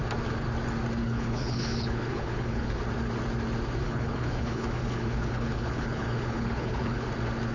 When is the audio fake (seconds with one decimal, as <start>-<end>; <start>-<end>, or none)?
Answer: 1.0-2.8; 3.8-7.1